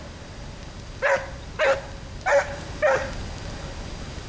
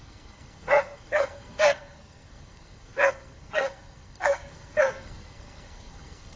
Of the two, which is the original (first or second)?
first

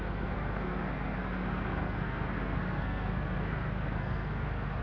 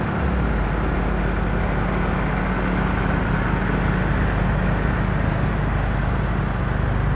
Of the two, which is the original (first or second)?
second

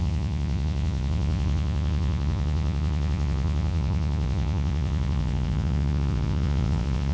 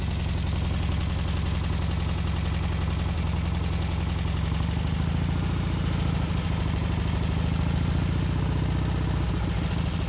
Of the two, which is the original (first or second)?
second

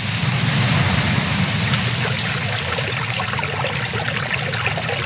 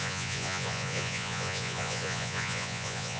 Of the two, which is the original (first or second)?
first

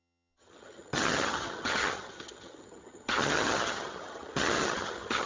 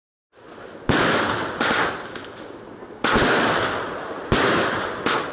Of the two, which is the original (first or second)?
second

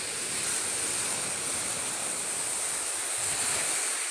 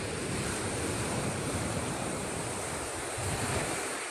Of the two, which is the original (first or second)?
first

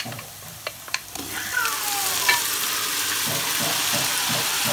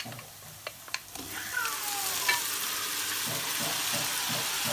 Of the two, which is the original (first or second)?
second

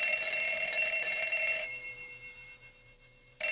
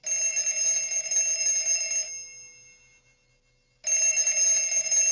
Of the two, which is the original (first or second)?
second